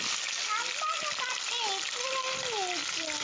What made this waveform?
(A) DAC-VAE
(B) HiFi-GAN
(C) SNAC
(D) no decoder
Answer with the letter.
D